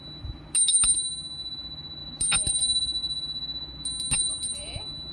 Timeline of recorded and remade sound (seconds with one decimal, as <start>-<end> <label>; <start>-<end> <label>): 0.0-5.1 recorded